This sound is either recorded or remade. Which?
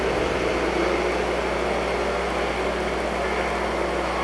recorded